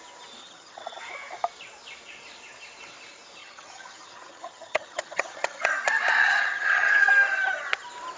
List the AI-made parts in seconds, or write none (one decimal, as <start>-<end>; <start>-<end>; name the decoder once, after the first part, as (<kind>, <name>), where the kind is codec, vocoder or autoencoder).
0.4-1.0 (vocoder, HiFi-GAN); 3.4-5.7; 6.2-7.1